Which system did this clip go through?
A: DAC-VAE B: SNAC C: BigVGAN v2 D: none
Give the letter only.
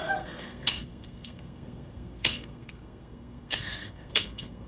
B